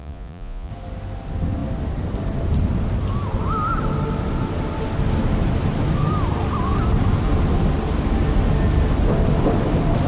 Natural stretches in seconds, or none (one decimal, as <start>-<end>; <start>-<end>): 0.7-10.1